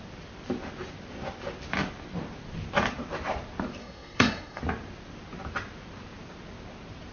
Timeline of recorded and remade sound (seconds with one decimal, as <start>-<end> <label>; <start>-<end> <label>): 0.0-3.8 recorded; 3.8-4.6 remade; 4.6-7.1 recorded